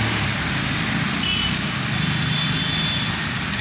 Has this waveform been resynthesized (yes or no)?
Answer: no